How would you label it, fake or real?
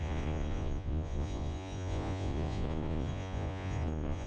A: fake